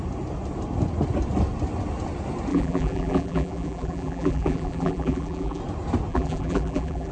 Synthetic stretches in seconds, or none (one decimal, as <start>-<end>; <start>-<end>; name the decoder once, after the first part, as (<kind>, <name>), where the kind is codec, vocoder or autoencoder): 2.5-5.6 (vocoder, BigVGAN v2); 6.1-7.1